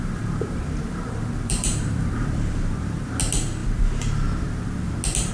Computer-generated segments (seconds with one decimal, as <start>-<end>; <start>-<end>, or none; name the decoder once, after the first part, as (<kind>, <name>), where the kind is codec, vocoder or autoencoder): 0.0-3.2 (vocoder, BigVGAN v2)